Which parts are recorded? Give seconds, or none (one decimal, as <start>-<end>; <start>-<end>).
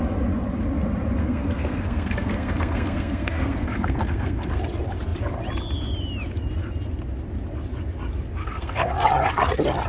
0.0-1.2; 4.6-8.4; 8.9-9.9